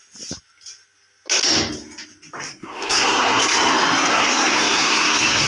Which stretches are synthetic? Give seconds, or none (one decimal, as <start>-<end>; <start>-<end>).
2.5-3.4; 4.1-5.5